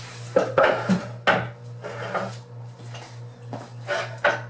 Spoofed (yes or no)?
no